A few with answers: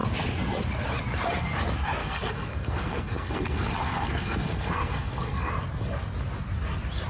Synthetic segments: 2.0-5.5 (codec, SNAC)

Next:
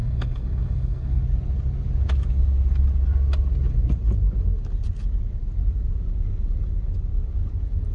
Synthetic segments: 0.0-1.2 (codec, SNAC)

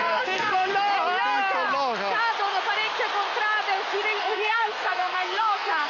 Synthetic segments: 0.0-0.7 (codec, SNAC); 4.2-5.9

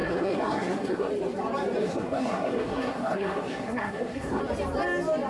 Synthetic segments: 0.0-1.1 (codec, SNAC); 1.8-4.4

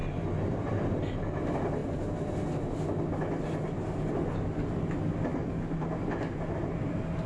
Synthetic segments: none

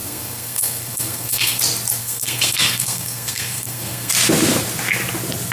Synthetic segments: 0.0-1.6 (codec, SNAC); 2.0-4.1

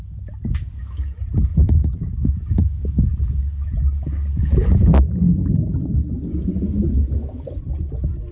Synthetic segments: none